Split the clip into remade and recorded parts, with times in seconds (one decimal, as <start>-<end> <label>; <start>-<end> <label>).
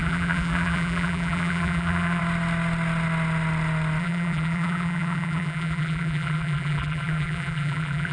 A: 0.0-2.2 remade; 2.2-4.0 recorded; 4.0-8.1 remade